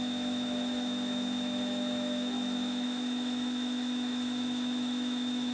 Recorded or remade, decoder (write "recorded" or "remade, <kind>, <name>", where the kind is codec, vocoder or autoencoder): remade, autoencoder, DAC-VAE